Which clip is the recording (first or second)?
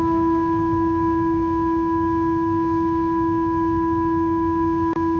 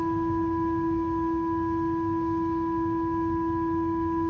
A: second